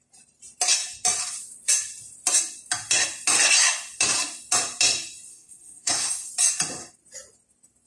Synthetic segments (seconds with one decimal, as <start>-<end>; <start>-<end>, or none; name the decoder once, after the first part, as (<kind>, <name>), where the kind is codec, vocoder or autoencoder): 5.3-6.3 (codec, SNAC)

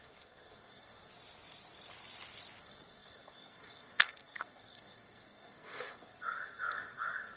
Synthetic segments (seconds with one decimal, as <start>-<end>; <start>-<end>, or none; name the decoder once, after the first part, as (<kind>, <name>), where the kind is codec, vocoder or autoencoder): 0.0-1.1 (codec, SNAC); 2.6-7.4

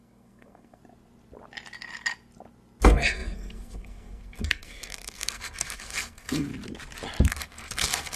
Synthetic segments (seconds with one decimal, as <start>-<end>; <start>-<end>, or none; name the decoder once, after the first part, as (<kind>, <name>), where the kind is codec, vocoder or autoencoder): 0.0-0.8 (codec, SNAC); 2.8-6.5; 7.3-8.2

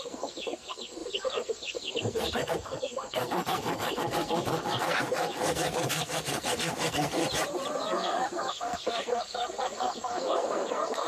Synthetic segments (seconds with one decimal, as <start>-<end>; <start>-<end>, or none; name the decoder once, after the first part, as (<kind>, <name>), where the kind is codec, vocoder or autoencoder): 0.0-7.2 (codec, SNAC); 7.8-11.1